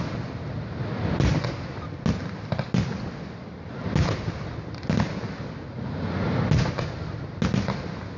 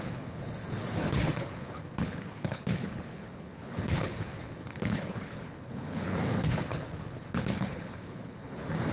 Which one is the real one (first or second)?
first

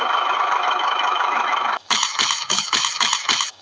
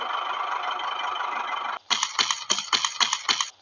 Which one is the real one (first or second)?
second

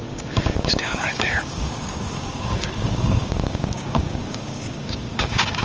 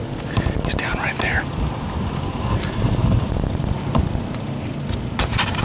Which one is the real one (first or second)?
second